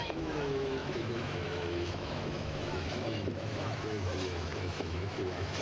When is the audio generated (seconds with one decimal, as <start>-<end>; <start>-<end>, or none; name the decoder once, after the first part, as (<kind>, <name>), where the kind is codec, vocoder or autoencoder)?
0.0-5.6 (autoencoder, DAC-VAE)